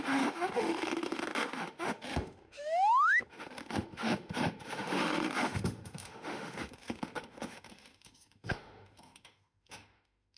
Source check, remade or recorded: remade